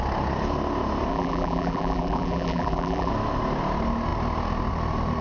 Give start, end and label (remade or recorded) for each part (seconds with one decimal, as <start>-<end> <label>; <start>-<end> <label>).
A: 0.0-1.1 recorded; 1.1-3.1 remade; 3.1-5.2 recorded